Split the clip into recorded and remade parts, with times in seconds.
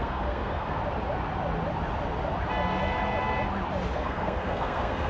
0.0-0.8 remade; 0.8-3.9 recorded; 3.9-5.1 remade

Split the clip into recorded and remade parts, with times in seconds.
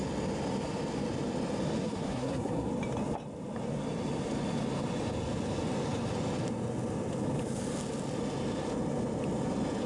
0.0-1.8 recorded; 1.8-2.7 remade; 2.7-9.9 recorded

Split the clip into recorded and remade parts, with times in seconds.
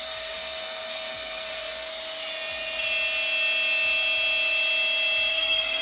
0.0-1.9 remade; 1.9-5.3 recorded; 5.3-5.8 remade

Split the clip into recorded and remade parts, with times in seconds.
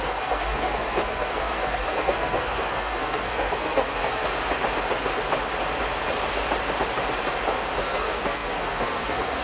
0.0-4.2 remade; 4.2-7.8 recorded; 7.8-9.4 remade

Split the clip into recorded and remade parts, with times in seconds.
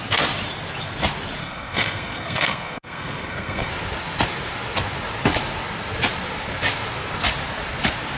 0.0-1.4 recorded; 1.4-3.7 remade; 3.7-8.2 recorded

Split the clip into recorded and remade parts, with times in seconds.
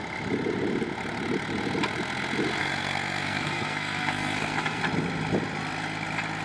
0.0-2.6 recorded; 2.6-4.8 remade; 4.8-6.4 recorded